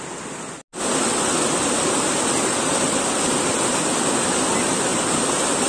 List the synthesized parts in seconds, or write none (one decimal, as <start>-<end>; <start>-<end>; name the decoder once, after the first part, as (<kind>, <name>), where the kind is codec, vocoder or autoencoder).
none